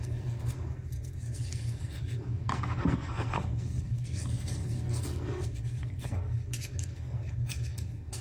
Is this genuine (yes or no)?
no